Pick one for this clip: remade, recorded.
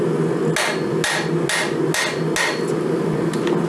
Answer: recorded